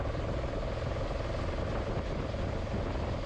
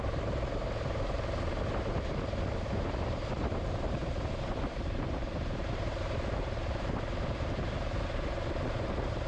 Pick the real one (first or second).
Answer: first